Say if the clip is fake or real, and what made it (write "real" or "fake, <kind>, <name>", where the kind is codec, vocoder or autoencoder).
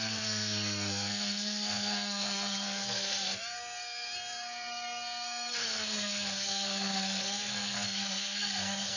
fake, codec, SNAC